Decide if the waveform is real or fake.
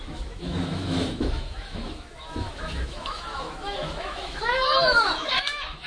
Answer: fake